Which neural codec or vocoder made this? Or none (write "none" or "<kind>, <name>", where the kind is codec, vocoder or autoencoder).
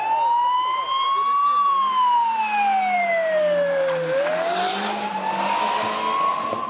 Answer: none